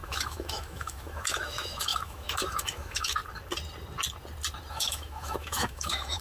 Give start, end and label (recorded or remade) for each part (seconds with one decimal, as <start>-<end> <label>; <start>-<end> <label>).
0.0-3.2 remade; 3.2-4.7 recorded; 4.7-6.2 remade